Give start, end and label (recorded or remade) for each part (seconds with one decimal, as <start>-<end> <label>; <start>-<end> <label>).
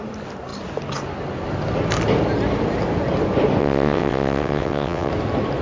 0.0-3.6 recorded; 3.6-5.1 remade; 5.1-5.6 recorded